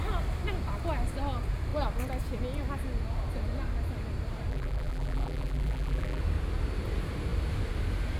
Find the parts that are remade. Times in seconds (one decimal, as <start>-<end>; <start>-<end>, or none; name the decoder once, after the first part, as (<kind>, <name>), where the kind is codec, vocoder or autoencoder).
4.5-6.2 (vocoder, BigVGAN v2)